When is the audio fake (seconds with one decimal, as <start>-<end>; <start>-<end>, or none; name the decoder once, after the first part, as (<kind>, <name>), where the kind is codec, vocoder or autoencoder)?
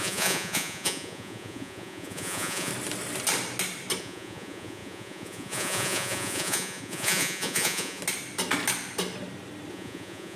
0.0-2.7 (vocoder, Vocos); 4.0-8.0; 9.7-10.4